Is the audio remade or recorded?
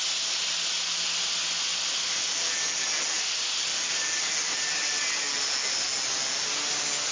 recorded